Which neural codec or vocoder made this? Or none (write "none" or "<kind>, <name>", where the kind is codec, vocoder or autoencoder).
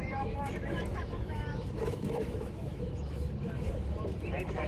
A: autoencoder, DAC-VAE